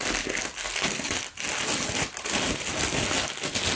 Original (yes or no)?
yes